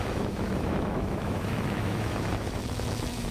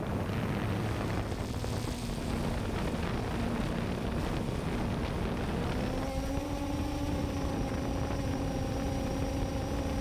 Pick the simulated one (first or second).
first